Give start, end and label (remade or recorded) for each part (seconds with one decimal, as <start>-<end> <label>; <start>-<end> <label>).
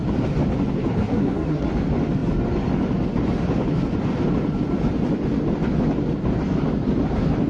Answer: 0.0-1.0 recorded; 1.0-1.7 remade; 1.7-7.5 recorded